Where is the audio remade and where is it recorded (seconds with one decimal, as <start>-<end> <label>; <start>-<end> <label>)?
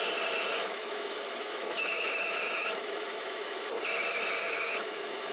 0.0-0.5 recorded; 0.5-3.7 remade; 3.7-4.4 recorded; 4.4-5.3 remade